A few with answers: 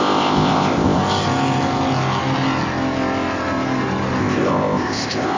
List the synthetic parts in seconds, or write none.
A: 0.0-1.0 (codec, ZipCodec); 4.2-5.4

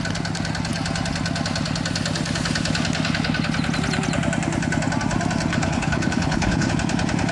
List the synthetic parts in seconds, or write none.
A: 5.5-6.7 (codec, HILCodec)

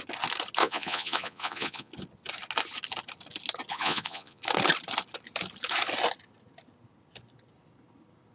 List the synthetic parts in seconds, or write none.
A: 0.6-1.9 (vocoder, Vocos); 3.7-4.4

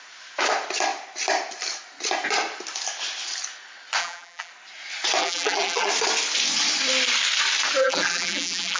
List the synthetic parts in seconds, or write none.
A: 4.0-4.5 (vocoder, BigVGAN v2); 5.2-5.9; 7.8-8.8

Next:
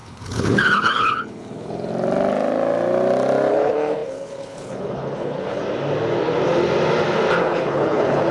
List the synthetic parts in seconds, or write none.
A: 0.0-1.9 (codec, HILCodec); 3.5-5.6; 7.4-8.3

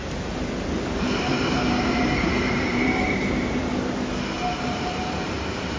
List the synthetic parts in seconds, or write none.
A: 0.0-3.6 (vocoder, BigVGAN v2); 4.5-5.8

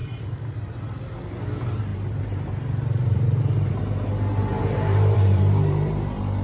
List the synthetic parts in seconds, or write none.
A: 0.0-1.4 (vocoder, BigVGAN v2); 1.9-3.7; 4.5-6.0